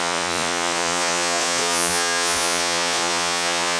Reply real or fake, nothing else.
fake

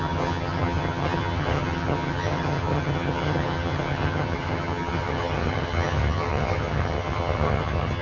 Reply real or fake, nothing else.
fake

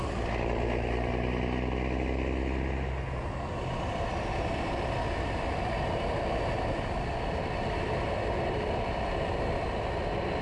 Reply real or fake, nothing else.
real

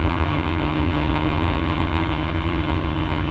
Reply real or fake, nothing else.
fake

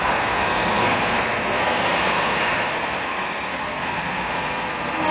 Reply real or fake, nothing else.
fake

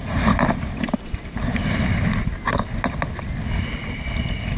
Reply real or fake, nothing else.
real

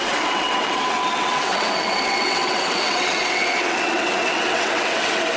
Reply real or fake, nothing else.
fake